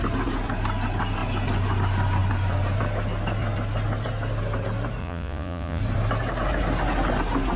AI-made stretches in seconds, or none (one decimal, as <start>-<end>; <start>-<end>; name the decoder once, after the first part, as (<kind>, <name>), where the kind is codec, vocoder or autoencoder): 5.0-5.8 (vocoder, Vocos)

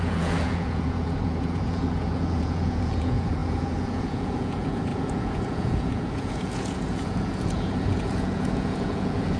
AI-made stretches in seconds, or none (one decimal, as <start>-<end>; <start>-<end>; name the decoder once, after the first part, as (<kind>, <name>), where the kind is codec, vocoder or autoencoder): 0.0-9.4 (vocoder, Vocos)

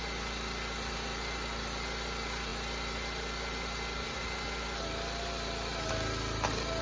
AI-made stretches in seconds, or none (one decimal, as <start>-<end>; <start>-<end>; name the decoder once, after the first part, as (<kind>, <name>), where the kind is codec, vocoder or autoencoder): none

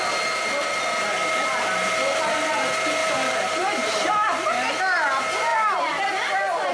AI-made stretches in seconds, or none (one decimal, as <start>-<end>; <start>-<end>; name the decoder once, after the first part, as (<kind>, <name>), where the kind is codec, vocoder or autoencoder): 3.0-4.1 (vocoder, BigVGAN v2)